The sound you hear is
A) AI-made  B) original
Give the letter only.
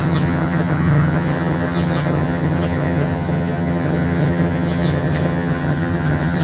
A